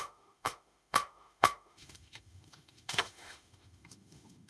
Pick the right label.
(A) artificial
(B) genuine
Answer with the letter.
A